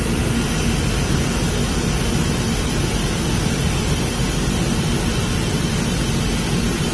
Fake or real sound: real